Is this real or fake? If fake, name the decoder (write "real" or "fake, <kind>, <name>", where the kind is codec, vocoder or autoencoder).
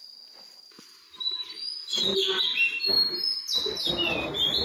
real